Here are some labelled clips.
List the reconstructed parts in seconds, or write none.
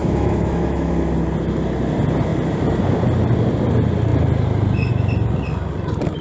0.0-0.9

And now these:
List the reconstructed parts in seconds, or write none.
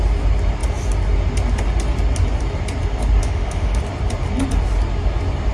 3.2-3.8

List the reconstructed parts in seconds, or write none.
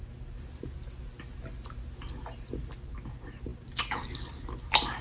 none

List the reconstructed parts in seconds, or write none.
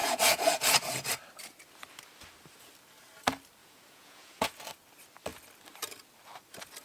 0.0-1.1; 3.6-4.5